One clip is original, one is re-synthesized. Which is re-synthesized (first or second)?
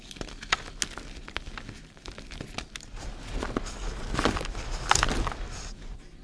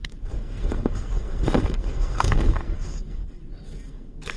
second